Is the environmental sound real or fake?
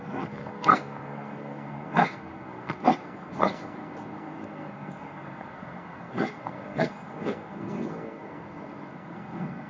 fake